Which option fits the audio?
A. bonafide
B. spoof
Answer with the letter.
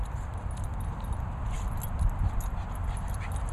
A